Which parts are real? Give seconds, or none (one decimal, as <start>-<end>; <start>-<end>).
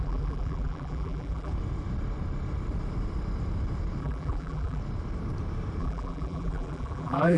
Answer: 1.5-4.0; 4.8-5.8